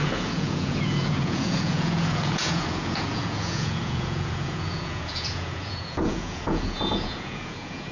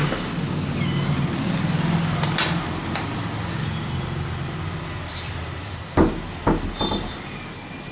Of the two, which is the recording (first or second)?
second